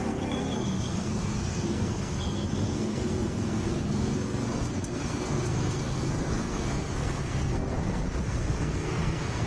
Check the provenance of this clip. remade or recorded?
remade